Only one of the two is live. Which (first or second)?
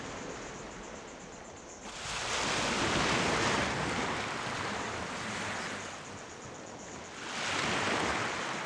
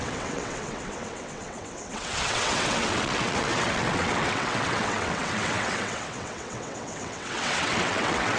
first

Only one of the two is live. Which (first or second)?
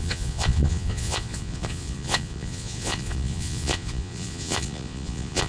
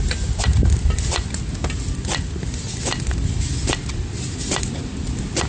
second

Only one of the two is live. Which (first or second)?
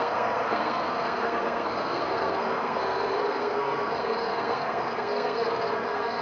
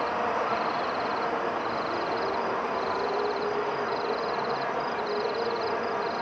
second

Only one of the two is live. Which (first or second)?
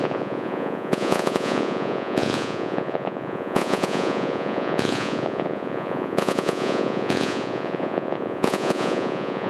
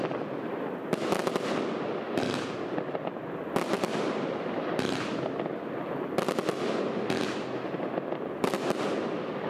second